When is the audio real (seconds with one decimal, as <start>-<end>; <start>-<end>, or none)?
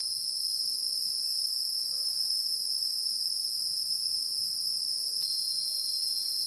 0.0-1.4; 4.7-5.5